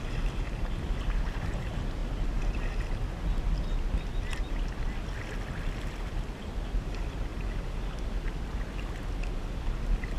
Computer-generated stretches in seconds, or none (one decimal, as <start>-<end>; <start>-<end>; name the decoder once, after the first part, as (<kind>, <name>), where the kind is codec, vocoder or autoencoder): none

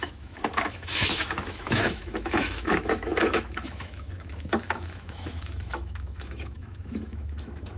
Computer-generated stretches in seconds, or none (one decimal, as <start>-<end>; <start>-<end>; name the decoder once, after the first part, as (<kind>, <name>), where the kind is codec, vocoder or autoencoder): 0.0-7.8 (autoencoder, DAC-VAE)

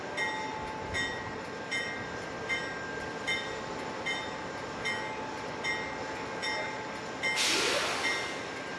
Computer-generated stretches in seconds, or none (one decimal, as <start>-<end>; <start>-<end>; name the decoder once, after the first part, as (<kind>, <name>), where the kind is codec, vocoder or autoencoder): none

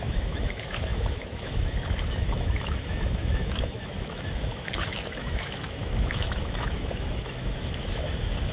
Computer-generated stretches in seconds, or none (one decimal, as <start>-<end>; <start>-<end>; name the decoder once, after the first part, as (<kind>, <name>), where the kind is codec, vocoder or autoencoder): 0.0-8.5 (autoencoder, DAC-VAE)

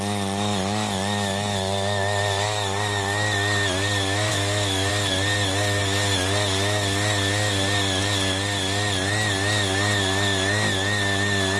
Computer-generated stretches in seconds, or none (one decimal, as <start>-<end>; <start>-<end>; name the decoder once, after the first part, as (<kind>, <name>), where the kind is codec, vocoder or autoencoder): 4.3-4.9 (autoencoder, DAC-VAE)